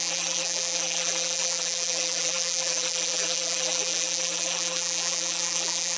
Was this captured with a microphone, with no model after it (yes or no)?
no